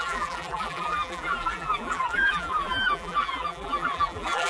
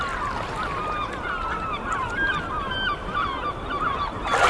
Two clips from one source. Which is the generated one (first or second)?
first